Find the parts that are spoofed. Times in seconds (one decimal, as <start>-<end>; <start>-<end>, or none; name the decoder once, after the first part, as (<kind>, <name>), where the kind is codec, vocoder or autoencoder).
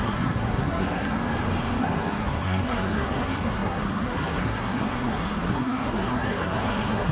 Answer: 0.0-1.2 (codec, SNAC); 1.8-7.1